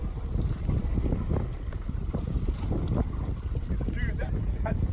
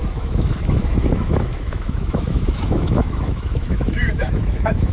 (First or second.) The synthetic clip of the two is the second